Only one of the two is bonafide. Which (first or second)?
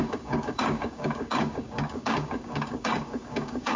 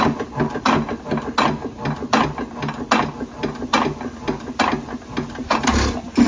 second